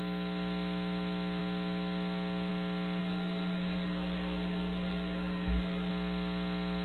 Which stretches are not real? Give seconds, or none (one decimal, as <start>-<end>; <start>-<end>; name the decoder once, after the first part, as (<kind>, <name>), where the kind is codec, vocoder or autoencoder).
3.0-5.9 (codec, SNAC)